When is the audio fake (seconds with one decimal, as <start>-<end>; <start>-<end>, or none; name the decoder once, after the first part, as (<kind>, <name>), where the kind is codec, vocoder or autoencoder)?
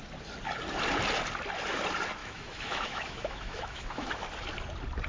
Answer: 2.2-4.1 (autoencoder, DAC-VAE)